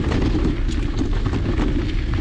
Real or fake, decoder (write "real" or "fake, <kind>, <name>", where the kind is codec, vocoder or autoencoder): real